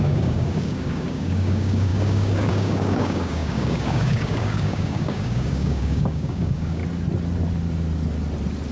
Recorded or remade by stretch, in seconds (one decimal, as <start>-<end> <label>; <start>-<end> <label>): 0.0-6.8 remade; 6.8-8.7 recorded